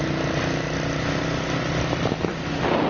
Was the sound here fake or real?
real